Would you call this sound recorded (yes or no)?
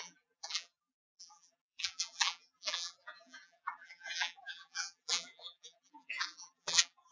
no